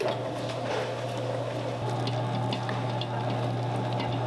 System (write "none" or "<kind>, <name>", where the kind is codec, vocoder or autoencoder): none